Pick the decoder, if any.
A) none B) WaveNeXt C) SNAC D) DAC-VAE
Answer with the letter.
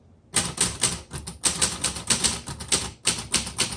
A